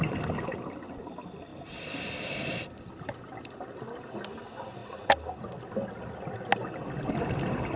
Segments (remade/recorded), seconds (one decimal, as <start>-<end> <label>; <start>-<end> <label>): 0.0-7.8 recorded